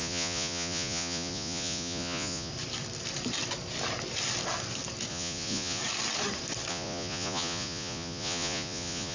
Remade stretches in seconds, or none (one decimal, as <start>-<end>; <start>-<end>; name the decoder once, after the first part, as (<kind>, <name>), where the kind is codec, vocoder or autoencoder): 0.0-2.5 (vocoder, Vocos); 5.1-5.8; 6.7-9.1